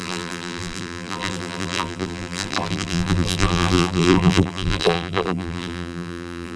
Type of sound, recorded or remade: remade